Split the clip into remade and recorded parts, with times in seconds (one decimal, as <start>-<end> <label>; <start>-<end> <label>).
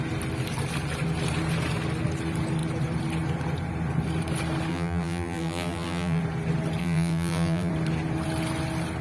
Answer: 0.0-4.7 recorded; 4.7-6.2 remade; 6.2-6.8 recorded; 6.8-7.7 remade; 7.7-9.0 recorded